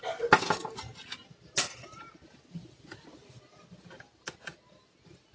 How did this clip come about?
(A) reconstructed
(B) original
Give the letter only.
B